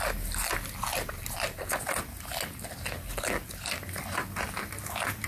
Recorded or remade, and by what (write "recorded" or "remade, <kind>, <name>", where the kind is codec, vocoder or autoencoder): recorded